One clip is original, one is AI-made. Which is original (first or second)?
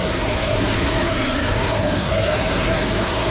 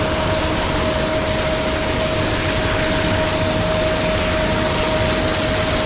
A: second